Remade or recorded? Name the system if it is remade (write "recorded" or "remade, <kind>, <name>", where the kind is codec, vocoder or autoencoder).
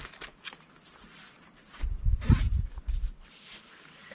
recorded